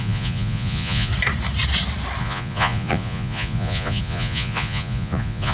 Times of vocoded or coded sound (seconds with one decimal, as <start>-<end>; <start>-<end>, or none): 0.0-1.1; 2.2-5.5